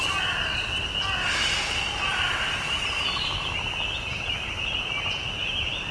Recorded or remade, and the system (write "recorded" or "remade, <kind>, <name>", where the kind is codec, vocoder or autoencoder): recorded